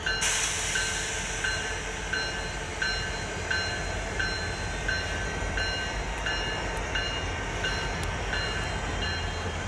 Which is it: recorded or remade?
recorded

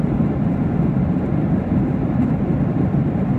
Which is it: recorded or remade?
remade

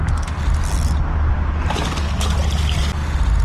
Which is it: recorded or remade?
recorded